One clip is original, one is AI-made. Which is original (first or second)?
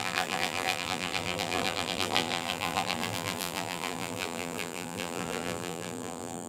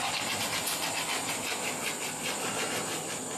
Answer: second